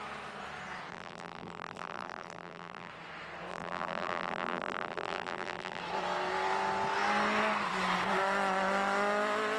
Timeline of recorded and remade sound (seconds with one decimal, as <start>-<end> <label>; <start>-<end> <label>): 0.0-0.9 recorded; 0.9-2.9 remade; 2.9-3.5 recorded; 3.5-5.8 remade; 5.8-9.6 recorded